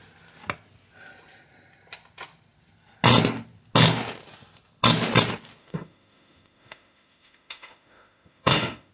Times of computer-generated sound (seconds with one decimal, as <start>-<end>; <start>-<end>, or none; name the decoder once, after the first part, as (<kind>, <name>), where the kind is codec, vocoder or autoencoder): 5.6-8.9 (autoencoder, DAC-VAE)